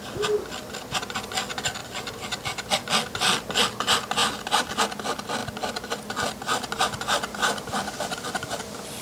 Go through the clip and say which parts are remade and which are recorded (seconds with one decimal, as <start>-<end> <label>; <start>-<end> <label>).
0.0-1.8 recorded; 1.8-2.9 remade; 2.9-4.2 recorded; 4.2-4.7 remade; 4.7-5.4 recorded; 5.4-6.3 remade; 6.3-9.0 recorded